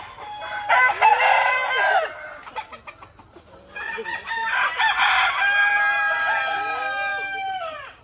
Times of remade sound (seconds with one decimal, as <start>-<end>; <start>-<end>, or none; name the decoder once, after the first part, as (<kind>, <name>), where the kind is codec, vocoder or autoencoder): none